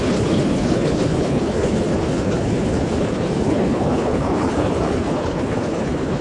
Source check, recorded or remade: remade